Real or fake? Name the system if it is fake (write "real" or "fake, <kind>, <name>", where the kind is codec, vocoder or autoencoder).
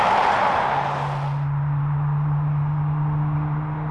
real